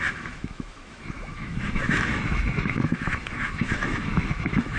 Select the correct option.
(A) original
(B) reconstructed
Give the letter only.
B